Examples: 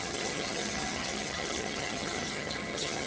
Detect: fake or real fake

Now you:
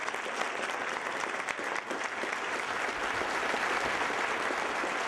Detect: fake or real real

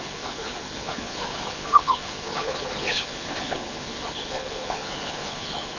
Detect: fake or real fake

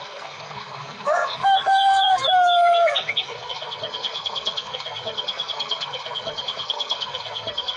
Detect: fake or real fake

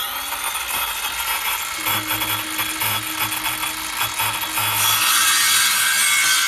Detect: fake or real real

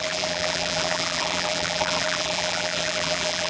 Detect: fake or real fake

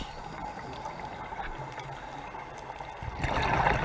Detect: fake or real real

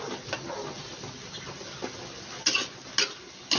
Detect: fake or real real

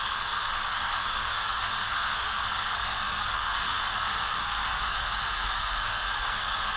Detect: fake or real fake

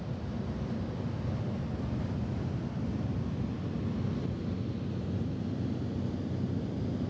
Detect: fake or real real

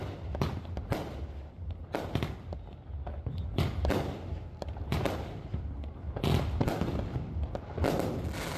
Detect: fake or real real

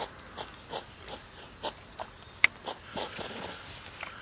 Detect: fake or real real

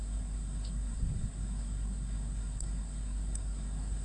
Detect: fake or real fake